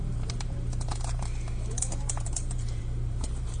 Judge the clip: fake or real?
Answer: fake